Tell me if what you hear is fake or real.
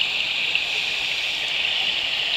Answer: real